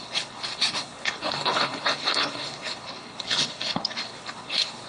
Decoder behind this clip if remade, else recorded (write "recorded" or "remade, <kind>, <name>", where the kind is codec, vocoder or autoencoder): remade, codec, HILCodec